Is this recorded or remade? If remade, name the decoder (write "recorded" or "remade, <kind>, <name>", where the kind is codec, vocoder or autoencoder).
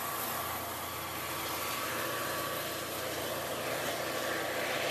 recorded